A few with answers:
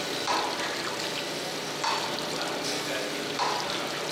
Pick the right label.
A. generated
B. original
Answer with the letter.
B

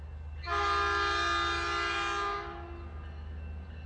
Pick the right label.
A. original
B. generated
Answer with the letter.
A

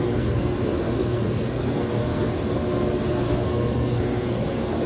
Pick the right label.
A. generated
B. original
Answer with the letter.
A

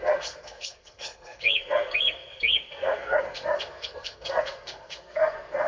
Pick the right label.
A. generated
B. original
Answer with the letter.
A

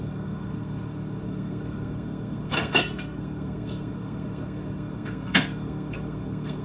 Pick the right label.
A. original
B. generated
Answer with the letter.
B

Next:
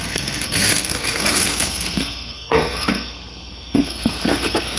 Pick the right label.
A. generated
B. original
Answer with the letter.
A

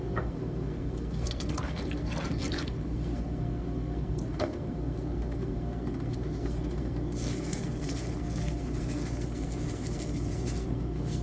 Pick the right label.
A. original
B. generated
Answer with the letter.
B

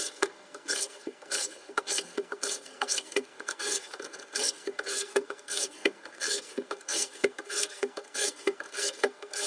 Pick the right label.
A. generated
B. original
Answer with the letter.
A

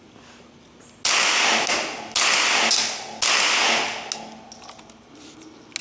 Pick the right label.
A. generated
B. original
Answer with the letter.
B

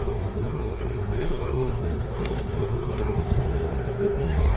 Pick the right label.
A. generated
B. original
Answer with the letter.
A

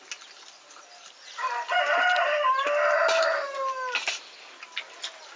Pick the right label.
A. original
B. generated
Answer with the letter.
A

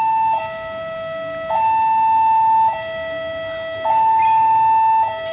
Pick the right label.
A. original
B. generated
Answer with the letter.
A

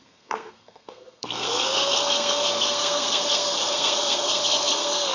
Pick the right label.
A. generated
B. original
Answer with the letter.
A